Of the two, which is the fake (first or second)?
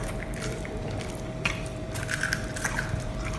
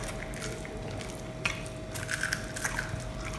first